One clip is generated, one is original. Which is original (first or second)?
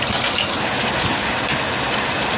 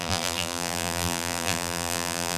first